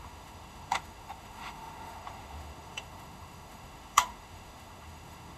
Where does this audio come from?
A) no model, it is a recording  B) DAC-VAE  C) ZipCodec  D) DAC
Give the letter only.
B